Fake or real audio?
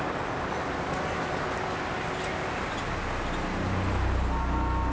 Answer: real